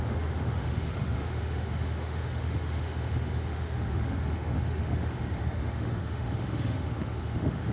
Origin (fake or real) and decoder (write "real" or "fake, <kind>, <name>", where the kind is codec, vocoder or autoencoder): fake, autoencoder, DAC-VAE